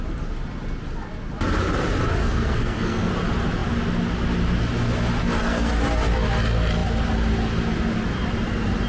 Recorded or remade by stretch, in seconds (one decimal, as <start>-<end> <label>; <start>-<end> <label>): 0.0-2.2 recorded; 2.2-3.1 remade; 3.1-5.2 recorded; 5.2-5.7 remade; 5.7-8.9 recorded

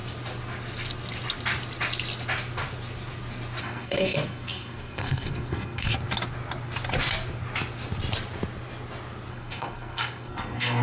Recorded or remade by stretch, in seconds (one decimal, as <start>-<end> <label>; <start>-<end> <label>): 0.0-3.6 recorded; 3.6-5.9 remade; 5.9-9.3 recorded; 9.3-10.8 remade

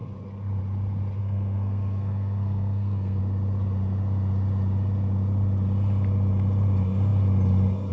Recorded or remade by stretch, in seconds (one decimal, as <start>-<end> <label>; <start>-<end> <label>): 0.0-1.2 recorded; 1.2-3.2 remade; 3.2-7.9 recorded